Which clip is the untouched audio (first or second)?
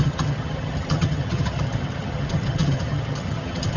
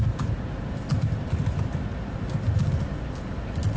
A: second